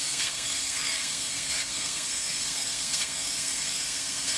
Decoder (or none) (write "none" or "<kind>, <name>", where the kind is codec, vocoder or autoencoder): codec, SNAC